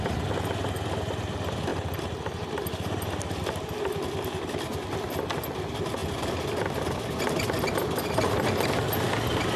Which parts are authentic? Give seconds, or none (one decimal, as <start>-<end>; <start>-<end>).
0.0-9.6